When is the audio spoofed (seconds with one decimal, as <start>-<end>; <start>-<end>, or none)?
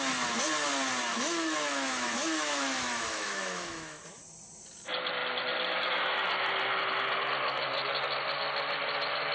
1.1-4.0